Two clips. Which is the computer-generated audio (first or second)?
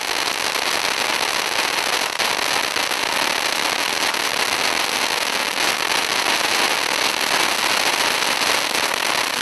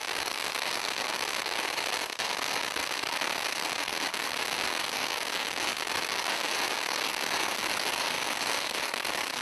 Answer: second